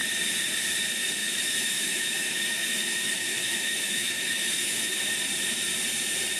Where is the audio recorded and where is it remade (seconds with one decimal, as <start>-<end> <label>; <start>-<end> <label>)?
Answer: 0.0-1.2 recorded; 1.2-5.0 remade; 5.0-6.4 recorded